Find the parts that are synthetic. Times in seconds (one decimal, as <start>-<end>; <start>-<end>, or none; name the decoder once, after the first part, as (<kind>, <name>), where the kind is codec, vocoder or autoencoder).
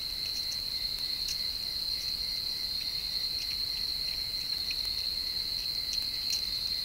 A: none